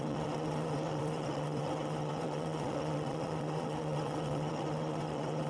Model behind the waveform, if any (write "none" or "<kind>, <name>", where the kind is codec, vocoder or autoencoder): vocoder, WaveNeXt